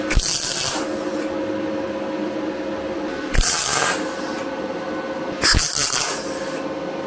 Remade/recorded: recorded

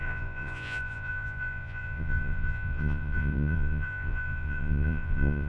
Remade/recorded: remade